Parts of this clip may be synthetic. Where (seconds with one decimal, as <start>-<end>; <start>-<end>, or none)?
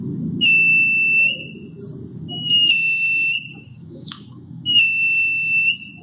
3.5-4.7